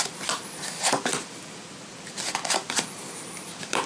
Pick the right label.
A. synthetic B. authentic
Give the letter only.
A